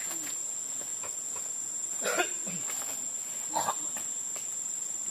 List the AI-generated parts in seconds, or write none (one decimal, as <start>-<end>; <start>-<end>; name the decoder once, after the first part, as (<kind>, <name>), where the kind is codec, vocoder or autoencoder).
none